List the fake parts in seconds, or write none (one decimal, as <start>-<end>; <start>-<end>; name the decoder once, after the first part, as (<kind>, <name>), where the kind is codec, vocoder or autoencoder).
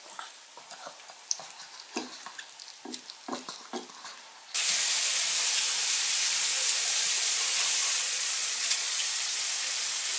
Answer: 7.8-9.0 (vocoder, Vocos)